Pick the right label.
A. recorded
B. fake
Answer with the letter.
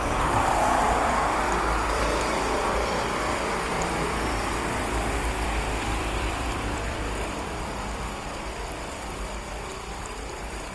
B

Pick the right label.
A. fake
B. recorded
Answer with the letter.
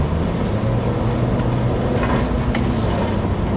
B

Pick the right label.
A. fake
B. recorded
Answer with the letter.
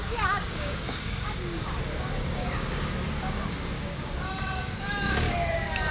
A